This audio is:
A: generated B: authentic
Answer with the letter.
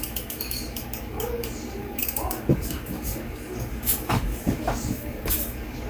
A